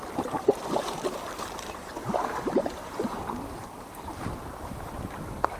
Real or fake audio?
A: fake